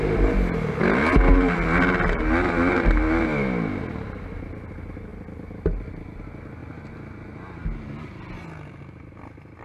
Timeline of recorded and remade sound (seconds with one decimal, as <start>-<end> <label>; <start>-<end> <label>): 0.0-9.6 recorded